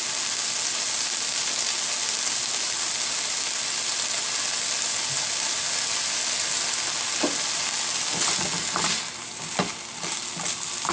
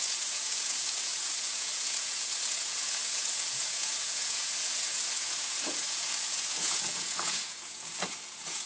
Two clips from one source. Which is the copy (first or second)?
second